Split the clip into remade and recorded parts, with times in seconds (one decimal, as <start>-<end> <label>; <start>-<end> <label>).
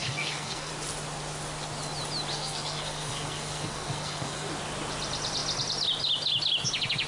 0.0-0.7 remade; 0.7-2.3 recorded; 2.3-4.5 remade; 4.5-7.1 recorded